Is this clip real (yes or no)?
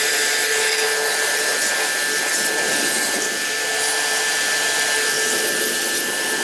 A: yes